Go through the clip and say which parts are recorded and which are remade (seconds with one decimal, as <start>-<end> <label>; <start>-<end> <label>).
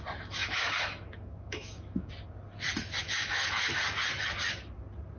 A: 0.0-0.4 recorded; 0.4-2.1 remade; 2.1-3.0 recorded; 3.0-3.6 remade; 3.6-5.2 recorded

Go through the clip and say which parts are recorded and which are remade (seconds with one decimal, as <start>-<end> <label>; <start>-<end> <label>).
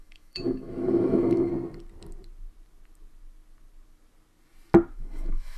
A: 0.0-1.5 remade; 1.5-4.9 recorded; 4.9-5.6 remade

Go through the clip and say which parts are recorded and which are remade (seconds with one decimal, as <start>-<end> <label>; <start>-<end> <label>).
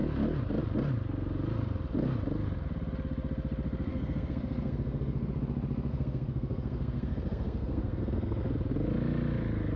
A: 0.0-3.9 recorded; 3.9-5.3 remade; 5.3-5.9 recorded; 5.9-8.5 remade; 8.5-9.8 recorded